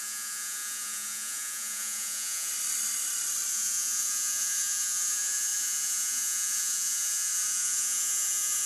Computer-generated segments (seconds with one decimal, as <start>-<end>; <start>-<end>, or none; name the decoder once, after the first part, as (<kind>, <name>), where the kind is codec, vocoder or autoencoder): 0.0-2.5 (vocoder, Vocos); 3.5-8.7